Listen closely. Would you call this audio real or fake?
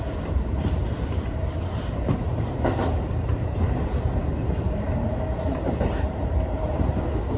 fake